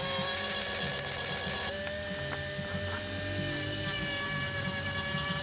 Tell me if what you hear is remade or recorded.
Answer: recorded